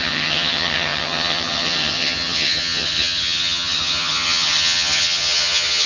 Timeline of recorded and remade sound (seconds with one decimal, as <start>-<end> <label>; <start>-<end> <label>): 0.0-5.9 remade

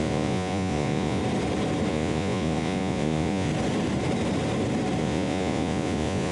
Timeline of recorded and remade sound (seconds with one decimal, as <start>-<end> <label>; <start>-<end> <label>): 0.0-1.2 remade; 1.2-1.9 recorded; 1.9-3.5 remade; 3.5-5.0 recorded; 5.0-6.3 remade

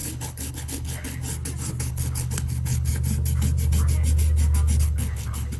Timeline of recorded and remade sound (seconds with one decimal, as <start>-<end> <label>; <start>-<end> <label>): 0.0-1.2 remade; 1.2-1.9 recorded; 1.9-2.9 remade; 2.9-4.8 recorded; 4.8-5.6 remade

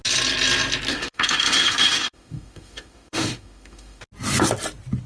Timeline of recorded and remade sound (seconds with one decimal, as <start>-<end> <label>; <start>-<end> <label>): 0.0-0.9 recorded; 0.9-4.0 remade; 4.0-5.1 recorded

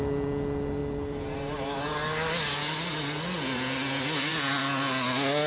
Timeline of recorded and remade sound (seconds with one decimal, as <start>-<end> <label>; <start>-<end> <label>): 0.0-5.5 recorded

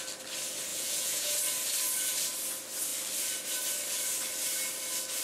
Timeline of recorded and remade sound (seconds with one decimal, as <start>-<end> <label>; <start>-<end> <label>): 0.0-0.7 recorded; 0.7-1.4 remade; 1.4-5.2 recorded

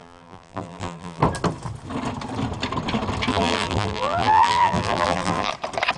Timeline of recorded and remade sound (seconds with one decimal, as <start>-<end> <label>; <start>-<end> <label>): 0.0-1.2 remade; 1.2-3.3 recorded; 3.3-5.5 remade; 5.5-6.0 recorded

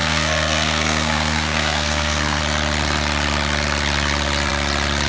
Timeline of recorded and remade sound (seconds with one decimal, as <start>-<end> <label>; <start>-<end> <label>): 0.0-2.4 remade; 2.4-5.1 recorded